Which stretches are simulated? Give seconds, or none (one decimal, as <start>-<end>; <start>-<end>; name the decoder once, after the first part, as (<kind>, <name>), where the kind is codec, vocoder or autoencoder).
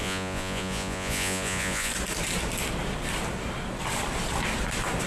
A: 0.0-1.9 (vocoder, Vocos)